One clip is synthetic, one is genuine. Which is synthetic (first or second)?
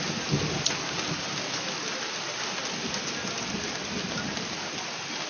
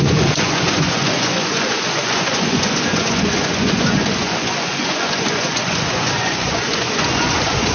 second